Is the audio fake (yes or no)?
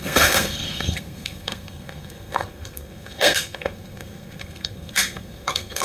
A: yes